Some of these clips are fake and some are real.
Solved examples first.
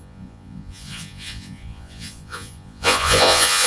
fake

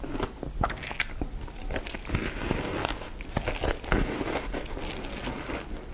real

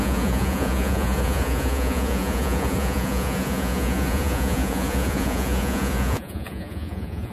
fake